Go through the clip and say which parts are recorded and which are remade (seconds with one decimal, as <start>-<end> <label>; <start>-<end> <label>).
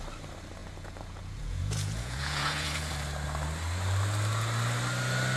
0.0-0.6 recorded; 0.6-2.9 remade; 2.9-5.4 recorded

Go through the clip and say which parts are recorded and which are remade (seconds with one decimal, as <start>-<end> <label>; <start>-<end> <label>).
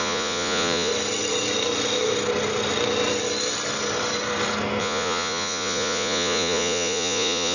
0.0-0.9 remade; 0.9-4.8 recorded; 4.8-7.5 remade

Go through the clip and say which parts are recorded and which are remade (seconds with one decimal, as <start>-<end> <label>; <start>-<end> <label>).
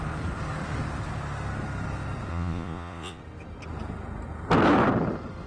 0.0-2.3 recorded; 2.3-3.2 remade; 3.2-5.5 recorded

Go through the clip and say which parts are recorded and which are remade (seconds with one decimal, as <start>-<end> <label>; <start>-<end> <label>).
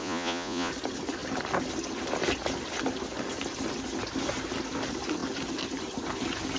0.0-0.7 remade; 0.7-6.6 recorded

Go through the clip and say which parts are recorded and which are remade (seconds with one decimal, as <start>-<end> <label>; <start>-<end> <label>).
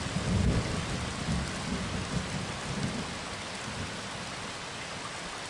0.0-5.5 recorded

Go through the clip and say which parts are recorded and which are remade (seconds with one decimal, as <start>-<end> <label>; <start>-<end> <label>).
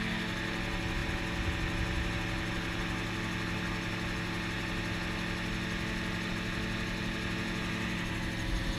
0.0-8.8 recorded